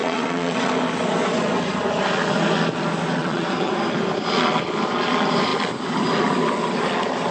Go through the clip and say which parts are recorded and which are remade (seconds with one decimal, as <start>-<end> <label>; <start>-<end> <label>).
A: 0.0-0.7 remade; 0.7-3.2 recorded; 3.2-3.7 remade; 3.7-7.3 recorded